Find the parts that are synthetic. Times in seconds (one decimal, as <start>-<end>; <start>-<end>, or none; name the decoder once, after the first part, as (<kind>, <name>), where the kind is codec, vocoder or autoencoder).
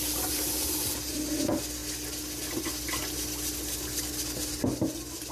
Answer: none